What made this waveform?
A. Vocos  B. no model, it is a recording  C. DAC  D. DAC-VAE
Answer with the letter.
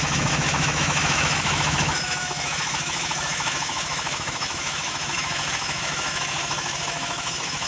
D